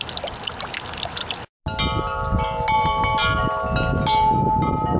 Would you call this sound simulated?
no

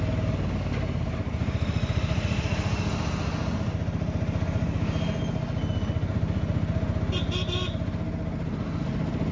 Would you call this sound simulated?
no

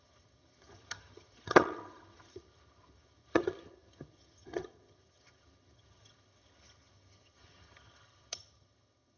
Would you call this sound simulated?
yes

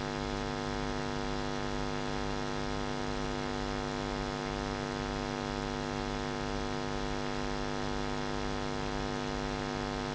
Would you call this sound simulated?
no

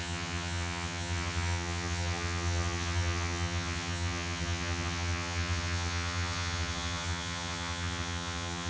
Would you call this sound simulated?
yes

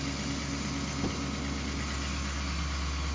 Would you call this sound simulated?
no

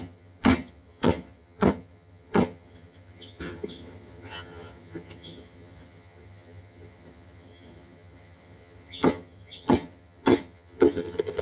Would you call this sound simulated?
yes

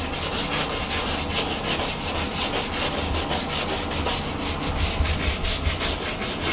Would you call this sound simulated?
no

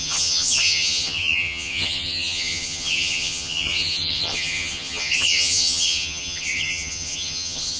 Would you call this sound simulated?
yes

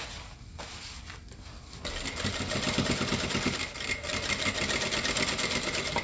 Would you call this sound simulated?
no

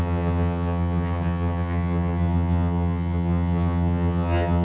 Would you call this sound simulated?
yes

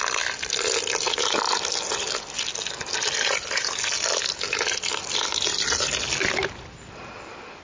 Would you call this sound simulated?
no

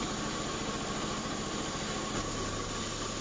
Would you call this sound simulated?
no